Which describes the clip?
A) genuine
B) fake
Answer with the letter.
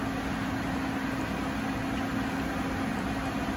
A